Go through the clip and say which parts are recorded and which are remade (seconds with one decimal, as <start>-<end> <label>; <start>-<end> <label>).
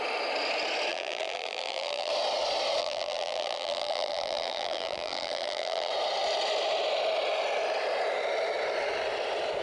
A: 0.0-0.9 recorded; 0.9-2.1 remade; 2.1-2.8 recorded; 2.8-5.9 remade; 5.9-9.6 recorded